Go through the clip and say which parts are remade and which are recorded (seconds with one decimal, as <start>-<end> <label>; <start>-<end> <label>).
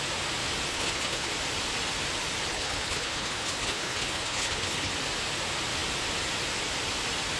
0.0-0.7 recorded; 0.7-1.3 remade; 1.3-2.5 recorded; 2.5-4.9 remade; 4.9-7.4 recorded